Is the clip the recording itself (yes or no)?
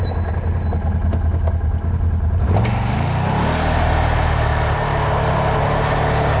yes